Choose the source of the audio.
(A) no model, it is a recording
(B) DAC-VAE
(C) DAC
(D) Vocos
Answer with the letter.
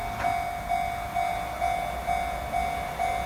A